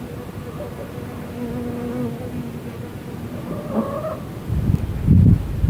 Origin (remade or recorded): recorded